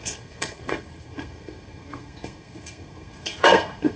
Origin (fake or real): fake